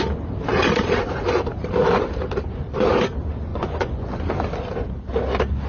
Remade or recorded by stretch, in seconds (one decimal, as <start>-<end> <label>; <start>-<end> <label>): 0.0-3.5 recorded; 3.5-4.2 remade; 4.2-5.7 recorded